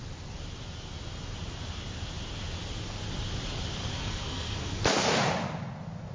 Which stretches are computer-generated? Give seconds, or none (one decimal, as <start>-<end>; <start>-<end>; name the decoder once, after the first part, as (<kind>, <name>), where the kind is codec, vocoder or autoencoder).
3.9-4.8 (codec, SNAC)